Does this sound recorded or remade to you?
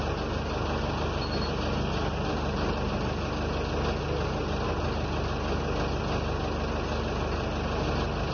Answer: recorded